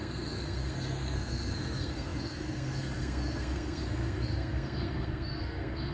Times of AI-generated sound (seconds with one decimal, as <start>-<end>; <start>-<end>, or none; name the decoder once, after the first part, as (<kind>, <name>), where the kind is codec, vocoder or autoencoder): 0.0-5.9 (codec, SNAC)